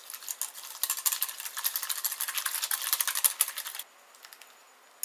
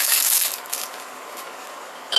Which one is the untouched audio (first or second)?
first